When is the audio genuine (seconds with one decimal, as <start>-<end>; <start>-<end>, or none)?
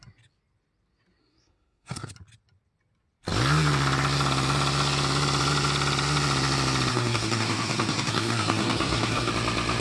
0.0-1.2; 2.1-6.9; 9.3-9.8